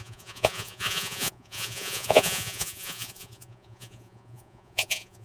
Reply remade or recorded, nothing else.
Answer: remade